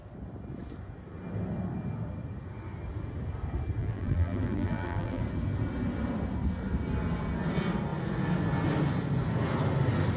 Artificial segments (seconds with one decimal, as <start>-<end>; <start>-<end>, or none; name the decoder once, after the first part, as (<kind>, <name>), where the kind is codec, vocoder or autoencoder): 3.8-5.2 (vocoder, BigVGAN v2)